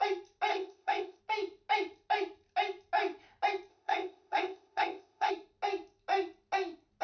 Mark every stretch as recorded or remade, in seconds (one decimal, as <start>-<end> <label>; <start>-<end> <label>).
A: 0.0-0.5 recorded; 0.5-1.2 remade; 1.2-3.7 recorded; 3.7-5.3 remade; 5.3-7.0 recorded